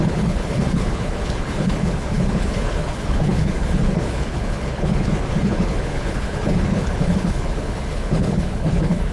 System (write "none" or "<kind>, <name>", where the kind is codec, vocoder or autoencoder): codec, HILCodec